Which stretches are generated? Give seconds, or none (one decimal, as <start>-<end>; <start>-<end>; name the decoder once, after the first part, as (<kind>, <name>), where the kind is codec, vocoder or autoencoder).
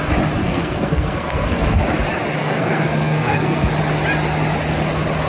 0.4-1.8 (codec, SNAC); 2.4-3.7